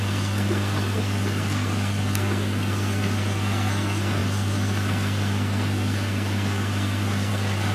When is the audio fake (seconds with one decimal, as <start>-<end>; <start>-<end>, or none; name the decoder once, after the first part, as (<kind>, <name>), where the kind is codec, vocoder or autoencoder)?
0.0-7.7 (codec, SNAC)